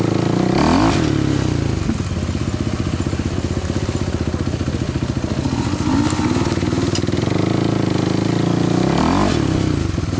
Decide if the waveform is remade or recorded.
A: recorded